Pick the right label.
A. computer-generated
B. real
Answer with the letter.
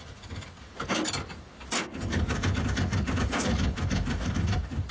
B